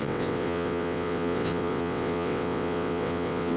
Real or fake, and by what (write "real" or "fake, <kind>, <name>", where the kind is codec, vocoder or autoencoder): fake, vocoder, WaveNeXt